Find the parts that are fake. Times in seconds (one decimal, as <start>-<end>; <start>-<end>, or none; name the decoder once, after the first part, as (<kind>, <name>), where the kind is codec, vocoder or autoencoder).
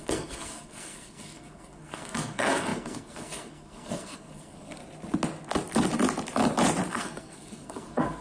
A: 0.0-4.8 (codec, SNAC); 6.9-8.2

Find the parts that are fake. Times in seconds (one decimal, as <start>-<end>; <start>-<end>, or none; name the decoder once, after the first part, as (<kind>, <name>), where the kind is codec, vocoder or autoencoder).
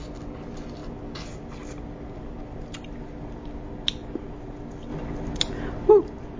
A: none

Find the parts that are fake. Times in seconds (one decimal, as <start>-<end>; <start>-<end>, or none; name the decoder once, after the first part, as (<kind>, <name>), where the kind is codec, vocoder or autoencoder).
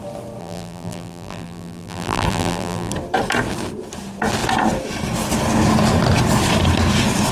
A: 0.4-2.9 (vocoder, BigVGAN v2)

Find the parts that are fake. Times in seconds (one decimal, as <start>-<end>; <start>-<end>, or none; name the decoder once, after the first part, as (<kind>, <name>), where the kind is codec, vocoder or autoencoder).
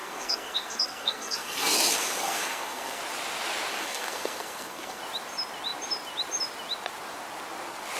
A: 0.0-3.0 (codec, SNAC); 3.7-5.0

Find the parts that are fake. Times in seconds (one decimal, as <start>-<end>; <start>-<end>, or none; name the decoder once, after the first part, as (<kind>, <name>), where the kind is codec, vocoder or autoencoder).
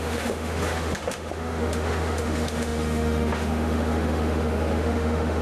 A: 0.0-5.4 (autoencoder, DAC-VAE)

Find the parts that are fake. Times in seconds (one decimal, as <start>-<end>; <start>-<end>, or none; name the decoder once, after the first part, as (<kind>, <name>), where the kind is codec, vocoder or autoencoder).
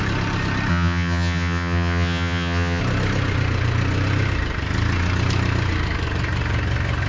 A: 0.7-2.8 (vocoder, HiFi-GAN)